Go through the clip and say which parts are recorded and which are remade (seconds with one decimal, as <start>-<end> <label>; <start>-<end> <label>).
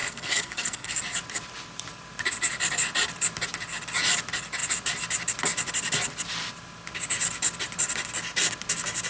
0.0-1.0 remade; 1.0-9.1 recorded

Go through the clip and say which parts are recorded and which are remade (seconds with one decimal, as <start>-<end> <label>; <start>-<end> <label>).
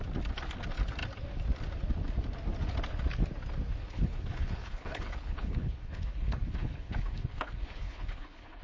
0.0-3.8 recorded; 3.8-8.6 remade